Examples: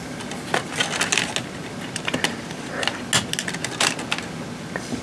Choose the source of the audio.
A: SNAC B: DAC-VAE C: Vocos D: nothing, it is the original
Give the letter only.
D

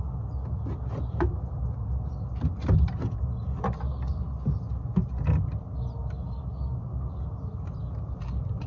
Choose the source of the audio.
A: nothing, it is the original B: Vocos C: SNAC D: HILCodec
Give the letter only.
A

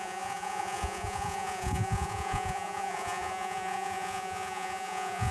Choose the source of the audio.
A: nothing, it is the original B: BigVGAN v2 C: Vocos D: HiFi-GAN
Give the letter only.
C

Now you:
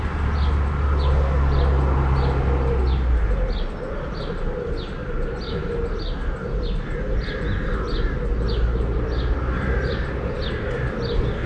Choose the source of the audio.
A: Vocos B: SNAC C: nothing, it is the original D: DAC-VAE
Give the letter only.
C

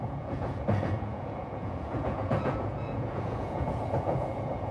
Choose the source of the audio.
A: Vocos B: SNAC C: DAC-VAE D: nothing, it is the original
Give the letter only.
A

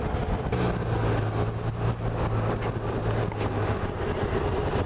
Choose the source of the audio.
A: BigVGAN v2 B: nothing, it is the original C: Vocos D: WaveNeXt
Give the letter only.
B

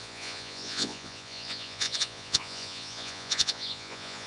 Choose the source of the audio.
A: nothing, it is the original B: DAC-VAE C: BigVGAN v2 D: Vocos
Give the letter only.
D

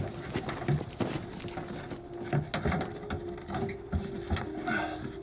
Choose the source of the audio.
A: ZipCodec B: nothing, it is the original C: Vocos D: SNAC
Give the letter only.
B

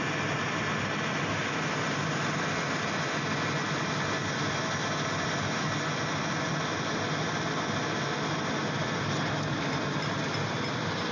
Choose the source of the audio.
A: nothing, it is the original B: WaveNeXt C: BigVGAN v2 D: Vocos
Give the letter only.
A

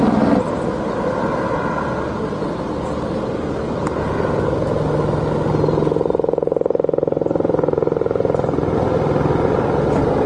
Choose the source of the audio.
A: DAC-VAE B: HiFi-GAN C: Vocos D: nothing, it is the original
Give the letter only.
D